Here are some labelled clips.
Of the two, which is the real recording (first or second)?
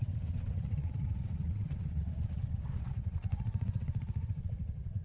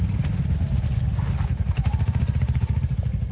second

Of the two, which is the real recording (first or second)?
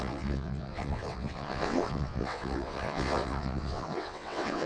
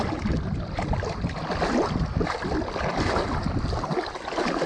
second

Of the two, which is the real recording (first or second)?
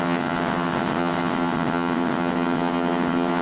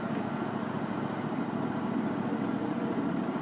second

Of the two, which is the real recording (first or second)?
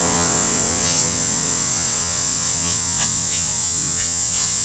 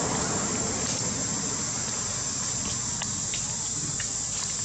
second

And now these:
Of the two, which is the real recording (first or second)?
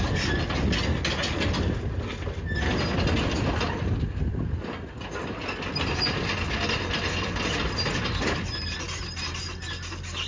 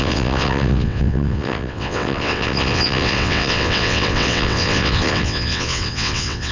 first